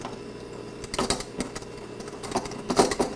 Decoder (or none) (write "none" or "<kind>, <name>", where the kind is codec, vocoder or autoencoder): none